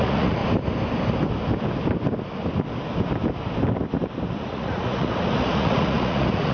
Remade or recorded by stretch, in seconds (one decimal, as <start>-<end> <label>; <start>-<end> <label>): 0.0-0.4 remade; 0.4-4.3 recorded; 4.3-6.5 remade